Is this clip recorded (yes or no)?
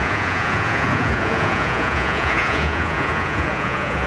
no